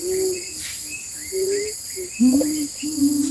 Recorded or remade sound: remade